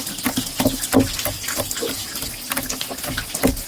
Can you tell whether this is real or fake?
real